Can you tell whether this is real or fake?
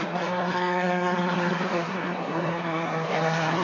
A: fake